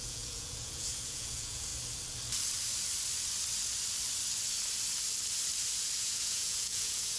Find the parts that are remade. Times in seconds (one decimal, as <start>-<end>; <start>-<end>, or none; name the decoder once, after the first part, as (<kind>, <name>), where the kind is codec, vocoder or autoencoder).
0.0-1.7 (vocoder, Vocos); 6.0-7.2

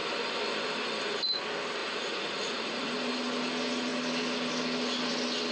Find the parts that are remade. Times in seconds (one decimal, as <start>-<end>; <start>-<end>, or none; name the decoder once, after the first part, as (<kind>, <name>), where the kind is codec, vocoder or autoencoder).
1.8-2.9 (vocoder, Vocos)